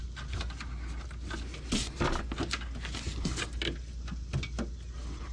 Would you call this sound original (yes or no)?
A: yes